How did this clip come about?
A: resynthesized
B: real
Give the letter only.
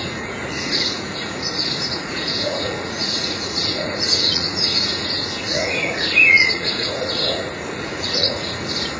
A